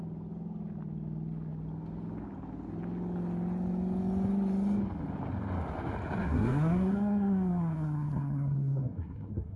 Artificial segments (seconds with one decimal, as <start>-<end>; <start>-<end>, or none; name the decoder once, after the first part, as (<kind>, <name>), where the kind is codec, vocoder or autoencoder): 6.2-9.6 (codec, SNAC)